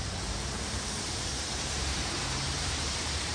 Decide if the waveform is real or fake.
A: fake